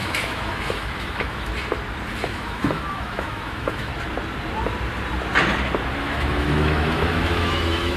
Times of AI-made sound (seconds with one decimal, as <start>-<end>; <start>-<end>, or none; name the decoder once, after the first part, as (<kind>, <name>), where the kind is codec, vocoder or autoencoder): 0.0-1.5 (autoencoder, DAC-VAE); 2.3-3.9; 6.0-8.0